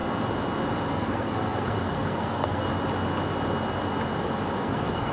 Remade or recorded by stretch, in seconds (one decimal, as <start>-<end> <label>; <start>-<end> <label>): 0.0-0.9 recorded; 0.9-2.7 remade; 2.7-4.6 recorded; 4.6-5.1 remade